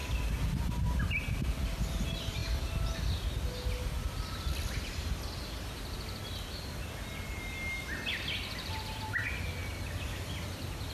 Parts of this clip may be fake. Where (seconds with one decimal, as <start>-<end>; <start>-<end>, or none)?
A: none

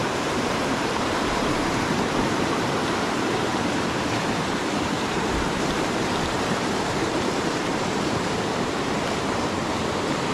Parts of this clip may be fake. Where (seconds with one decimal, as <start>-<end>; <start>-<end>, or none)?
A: 0.0-10.3

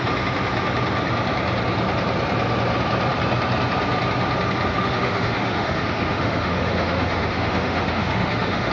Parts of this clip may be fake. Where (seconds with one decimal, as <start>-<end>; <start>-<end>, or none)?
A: 4.7-8.7

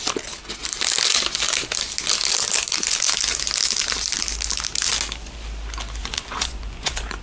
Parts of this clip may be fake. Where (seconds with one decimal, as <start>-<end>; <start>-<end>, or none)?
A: 6.0-7.2

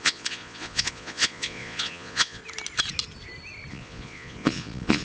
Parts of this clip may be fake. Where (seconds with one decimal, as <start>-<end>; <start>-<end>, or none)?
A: 0.0-2.4; 3.7-5.0